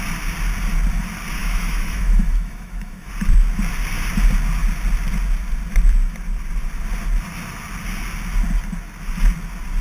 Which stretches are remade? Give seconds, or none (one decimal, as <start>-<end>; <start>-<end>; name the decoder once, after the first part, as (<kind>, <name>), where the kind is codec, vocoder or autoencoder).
1.4-3.1 (autoencoder, DAC-VAE)